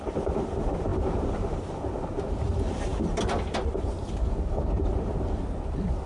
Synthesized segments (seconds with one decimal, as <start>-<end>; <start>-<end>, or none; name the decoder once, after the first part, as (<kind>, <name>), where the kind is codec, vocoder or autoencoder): none